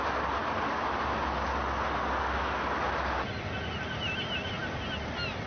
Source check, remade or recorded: recorded